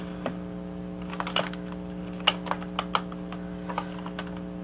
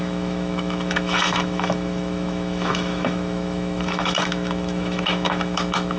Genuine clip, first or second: first